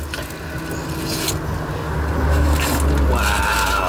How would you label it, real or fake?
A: real